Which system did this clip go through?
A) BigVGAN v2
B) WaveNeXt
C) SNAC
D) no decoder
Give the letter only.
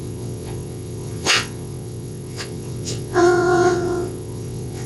B